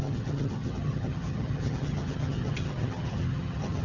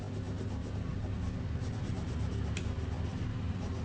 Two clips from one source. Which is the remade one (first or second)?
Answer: first